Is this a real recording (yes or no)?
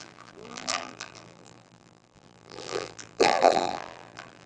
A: no